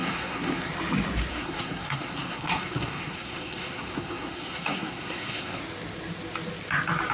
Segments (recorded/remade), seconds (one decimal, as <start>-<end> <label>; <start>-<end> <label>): 0.0-0.7 remade; 0.7-1.3 recorded; 1.3-5.6 remade; 5.6-7.1 recorded